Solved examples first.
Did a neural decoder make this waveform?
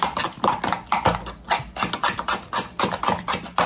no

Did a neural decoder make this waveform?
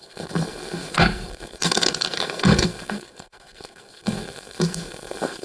yes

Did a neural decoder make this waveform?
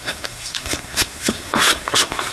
yes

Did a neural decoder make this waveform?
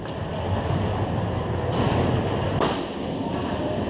no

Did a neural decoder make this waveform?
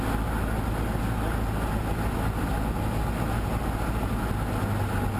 no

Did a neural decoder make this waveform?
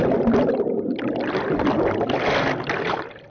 no